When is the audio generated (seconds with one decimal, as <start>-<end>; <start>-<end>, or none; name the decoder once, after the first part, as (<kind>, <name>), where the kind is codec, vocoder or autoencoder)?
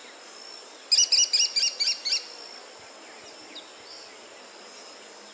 none